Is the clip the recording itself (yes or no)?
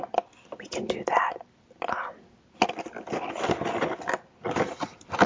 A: yes